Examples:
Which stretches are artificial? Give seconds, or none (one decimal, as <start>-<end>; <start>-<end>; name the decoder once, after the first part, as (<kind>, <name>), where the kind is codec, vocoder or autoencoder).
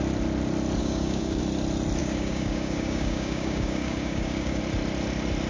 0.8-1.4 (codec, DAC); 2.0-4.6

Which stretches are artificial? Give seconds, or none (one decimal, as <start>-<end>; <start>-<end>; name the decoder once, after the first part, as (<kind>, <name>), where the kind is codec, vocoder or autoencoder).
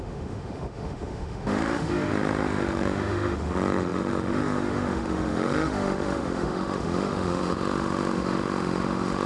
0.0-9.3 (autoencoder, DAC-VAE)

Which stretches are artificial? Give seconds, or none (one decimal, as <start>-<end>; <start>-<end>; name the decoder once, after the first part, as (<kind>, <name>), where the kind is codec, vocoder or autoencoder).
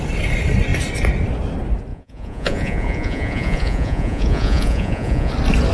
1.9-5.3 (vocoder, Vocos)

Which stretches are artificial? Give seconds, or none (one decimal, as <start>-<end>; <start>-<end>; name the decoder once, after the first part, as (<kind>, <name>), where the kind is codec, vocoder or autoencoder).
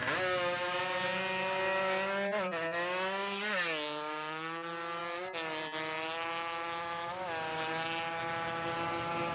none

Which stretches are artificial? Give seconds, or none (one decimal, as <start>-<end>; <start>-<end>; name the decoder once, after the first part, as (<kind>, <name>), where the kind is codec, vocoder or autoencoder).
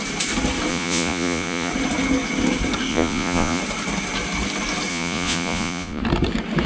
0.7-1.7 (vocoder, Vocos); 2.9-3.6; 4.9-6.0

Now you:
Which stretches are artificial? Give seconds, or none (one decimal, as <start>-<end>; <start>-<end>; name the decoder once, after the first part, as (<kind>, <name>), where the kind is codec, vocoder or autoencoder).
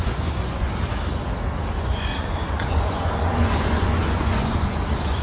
0.0-0.7 (vocoder, Vocos); 1.7-5.2